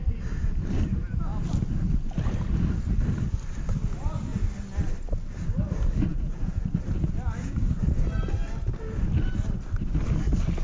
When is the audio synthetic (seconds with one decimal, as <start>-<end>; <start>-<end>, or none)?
6.1-6.7